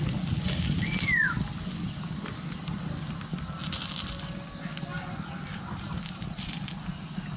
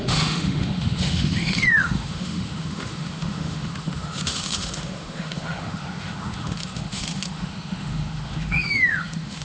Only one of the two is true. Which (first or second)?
first